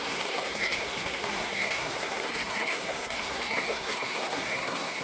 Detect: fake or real fake